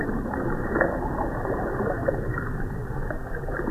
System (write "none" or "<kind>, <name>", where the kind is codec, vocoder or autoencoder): none